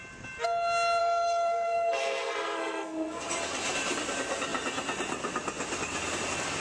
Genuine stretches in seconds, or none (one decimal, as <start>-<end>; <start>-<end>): 0.0-1.0; 3.2-6.6